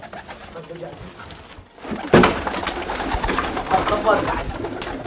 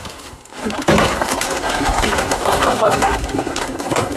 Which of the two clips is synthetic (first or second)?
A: second